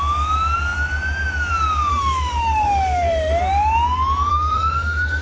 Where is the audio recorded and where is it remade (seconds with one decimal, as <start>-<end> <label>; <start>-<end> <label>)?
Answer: 0.0-1.9 recorded; 1.9-3.4 remade; 3.4-4.3 recorded; 4.3-5.2 remade